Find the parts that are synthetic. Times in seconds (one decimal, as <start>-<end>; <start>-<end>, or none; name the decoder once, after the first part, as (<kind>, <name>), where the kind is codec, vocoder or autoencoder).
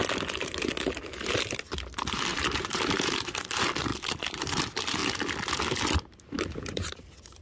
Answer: 2.3-3.3 (vocoder, BigVGAN v2); 3.9-4.6